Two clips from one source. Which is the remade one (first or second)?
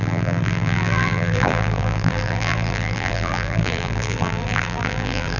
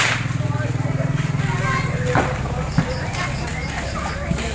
first